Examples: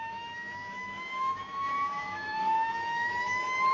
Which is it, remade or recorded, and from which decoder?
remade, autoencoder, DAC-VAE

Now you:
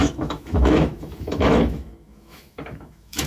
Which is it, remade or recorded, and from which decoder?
remade, autoencoder, DAC-VAE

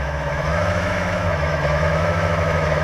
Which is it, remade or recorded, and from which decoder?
remade, autoencoder, DAC-VAE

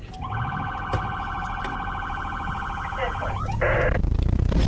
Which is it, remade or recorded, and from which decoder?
recorded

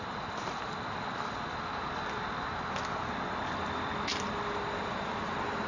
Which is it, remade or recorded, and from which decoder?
recorded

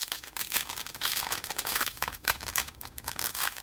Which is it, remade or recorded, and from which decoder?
remade, autoencoder, DAC-VAE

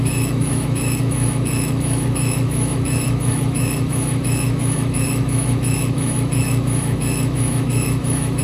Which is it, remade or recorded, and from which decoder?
remade, autoencoder, DAC-VAE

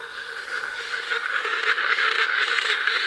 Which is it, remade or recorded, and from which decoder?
remade, autoencoder, DAC-VAE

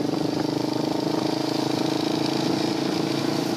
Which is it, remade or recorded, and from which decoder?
recorded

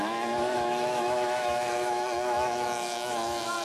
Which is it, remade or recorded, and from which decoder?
remade, autoencoder, DAC-VAE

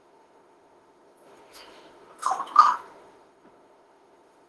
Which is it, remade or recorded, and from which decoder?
remade, autoencoder, DAC-VAE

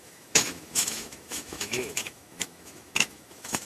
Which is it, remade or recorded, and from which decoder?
remade, autoencoder, DAC-VAE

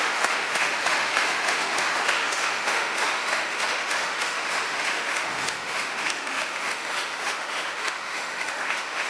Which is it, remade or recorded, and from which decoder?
remade, autoencoder, DAC-VAE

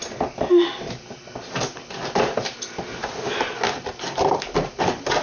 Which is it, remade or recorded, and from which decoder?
recorded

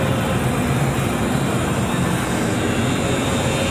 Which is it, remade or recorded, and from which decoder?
recorded